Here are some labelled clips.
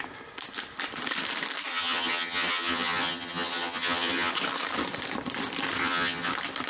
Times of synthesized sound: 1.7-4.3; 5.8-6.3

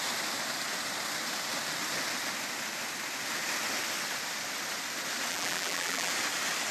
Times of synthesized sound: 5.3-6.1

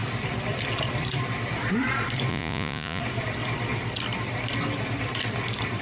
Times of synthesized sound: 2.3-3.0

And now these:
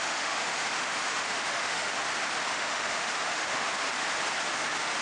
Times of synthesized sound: 0.0-1.9; 2.5-3.7; 4.5-5.0

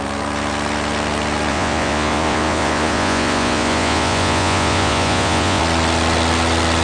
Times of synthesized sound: 1.5-5.6

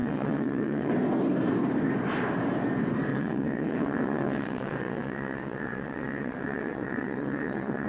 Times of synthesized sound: 0.0-0.9; 3.1-7.9

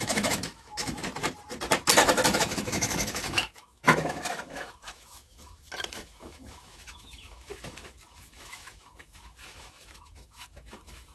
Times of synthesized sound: 0.0-1.0; 2.4-11.1

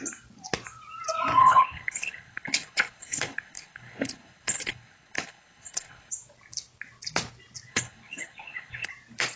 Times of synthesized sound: 1.4-6.1; 7.7-8.9